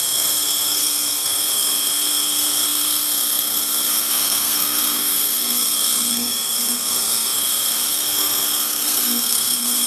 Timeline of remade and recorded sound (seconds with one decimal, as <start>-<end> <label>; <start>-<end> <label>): 0.0-9.9 remade